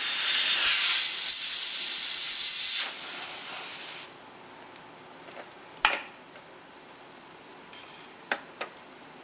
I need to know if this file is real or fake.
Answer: real